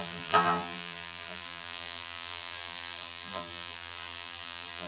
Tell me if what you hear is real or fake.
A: fake